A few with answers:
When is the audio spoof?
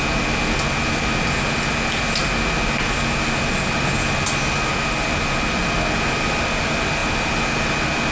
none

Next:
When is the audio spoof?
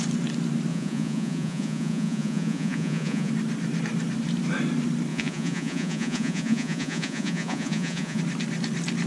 0.7-3.3 (vocoder, Vocos); 5.1-8.2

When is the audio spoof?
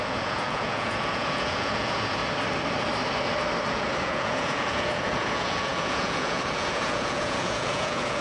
0.0-2.2 (vocoder, Vocos); 3.7-8.2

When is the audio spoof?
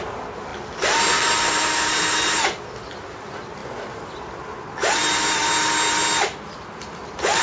none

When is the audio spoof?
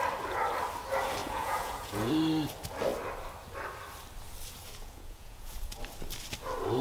1.2-2.1 (vocoder, Vocos); 4.7-5.8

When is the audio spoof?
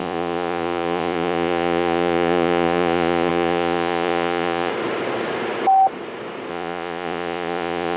0.0-4.7 (vocoder, Vocos); 6.5-8.0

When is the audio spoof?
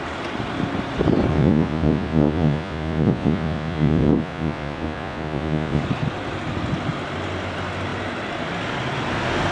1.3-5.8 (vocoder, Vocos)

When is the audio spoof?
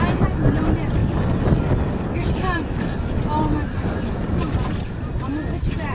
none